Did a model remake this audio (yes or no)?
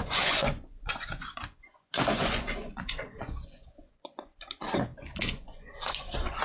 yes